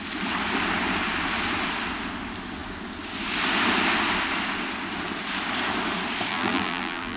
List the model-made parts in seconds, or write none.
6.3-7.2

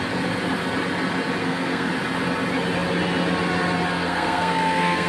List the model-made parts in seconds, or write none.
1.4-1.9; 3.9-5.1

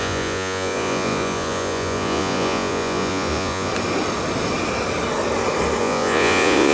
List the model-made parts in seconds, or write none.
0.0-3.7; 5.8-6.7

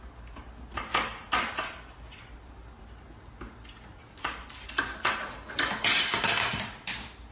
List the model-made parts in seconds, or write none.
0.9-2.8; 3.9-4.8; 6.5-7.3